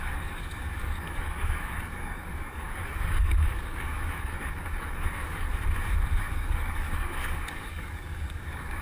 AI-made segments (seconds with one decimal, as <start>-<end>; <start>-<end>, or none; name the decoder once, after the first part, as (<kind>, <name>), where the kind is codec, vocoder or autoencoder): 0.0-5.5 (codec, DAC); 6.2-8.8